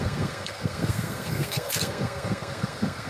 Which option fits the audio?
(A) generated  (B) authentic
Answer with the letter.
A